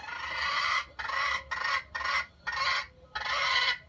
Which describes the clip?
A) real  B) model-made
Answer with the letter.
A